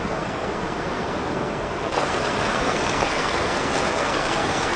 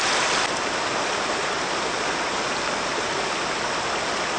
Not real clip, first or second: first